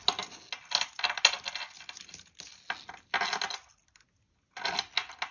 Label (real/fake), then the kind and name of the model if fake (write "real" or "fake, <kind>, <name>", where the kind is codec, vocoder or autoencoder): real